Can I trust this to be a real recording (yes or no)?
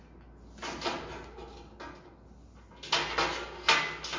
yes